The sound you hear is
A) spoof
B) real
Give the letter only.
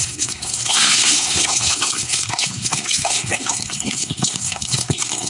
A